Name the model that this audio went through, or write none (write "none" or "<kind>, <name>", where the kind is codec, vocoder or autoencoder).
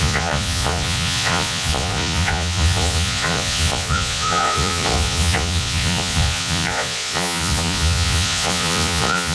vocoder, Vocos